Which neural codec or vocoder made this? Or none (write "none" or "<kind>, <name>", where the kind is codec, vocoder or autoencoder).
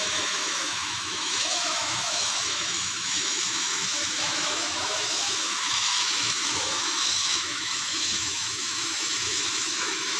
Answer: autoencoder, DAC-VAE